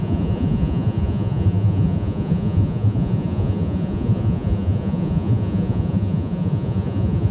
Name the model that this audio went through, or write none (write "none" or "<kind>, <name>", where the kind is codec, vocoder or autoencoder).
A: vocoder, Vocos